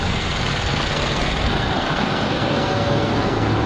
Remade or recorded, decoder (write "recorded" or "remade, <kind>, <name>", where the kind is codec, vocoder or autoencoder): remade, codec, SNAC